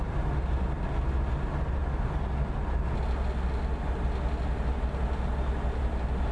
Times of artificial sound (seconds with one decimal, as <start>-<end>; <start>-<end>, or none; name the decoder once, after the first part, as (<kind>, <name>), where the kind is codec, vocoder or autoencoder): none